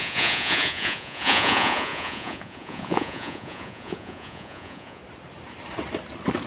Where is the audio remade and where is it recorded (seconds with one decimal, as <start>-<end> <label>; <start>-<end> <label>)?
0.0-5.0 remade; 5.0-6.5 recorded